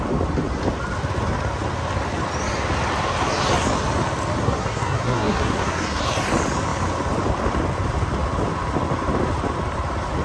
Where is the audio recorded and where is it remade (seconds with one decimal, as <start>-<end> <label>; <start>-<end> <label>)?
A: 0.0-4.4 recorded; 4.4-6.0 remade; 6.0-10.2 recorded